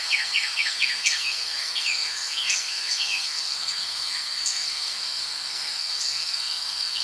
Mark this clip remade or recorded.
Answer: remade